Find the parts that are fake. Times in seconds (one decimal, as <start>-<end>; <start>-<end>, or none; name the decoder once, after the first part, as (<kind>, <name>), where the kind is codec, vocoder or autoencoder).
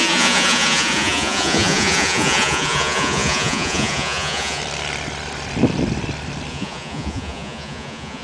0.0-4.6 (vocoder, Vocos); 6.5-8.2